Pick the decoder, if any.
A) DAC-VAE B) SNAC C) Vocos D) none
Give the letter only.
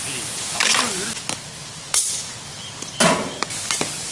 D